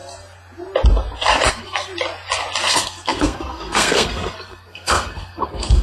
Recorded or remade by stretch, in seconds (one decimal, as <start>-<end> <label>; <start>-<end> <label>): 0.0-1.5 recorded; 1.5-1.9 remade; 1.9-2.7 recorded; 2.7-5.8 remade